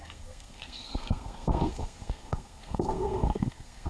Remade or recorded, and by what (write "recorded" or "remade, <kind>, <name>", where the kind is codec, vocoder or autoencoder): remade, codec, SNAC